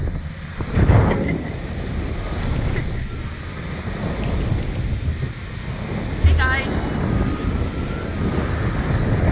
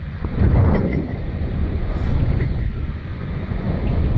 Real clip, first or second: first